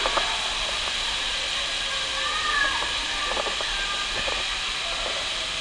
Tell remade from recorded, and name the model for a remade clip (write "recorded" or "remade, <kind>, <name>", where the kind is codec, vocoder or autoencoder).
recorded